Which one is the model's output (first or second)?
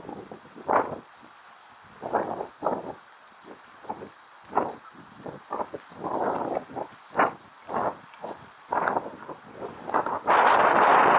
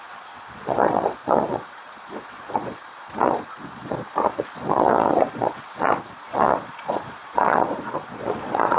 second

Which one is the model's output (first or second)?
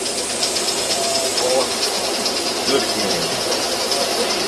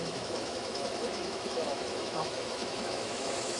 second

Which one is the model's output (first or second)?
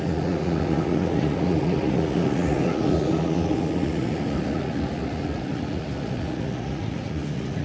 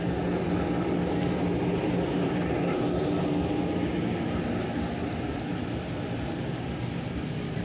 first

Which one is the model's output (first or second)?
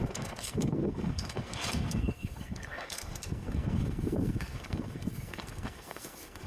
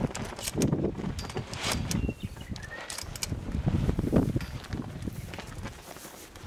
first